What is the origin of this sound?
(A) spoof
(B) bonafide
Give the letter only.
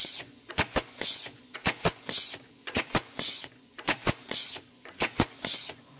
A